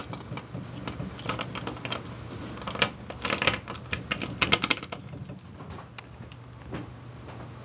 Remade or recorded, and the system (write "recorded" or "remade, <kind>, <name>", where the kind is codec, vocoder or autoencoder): recorded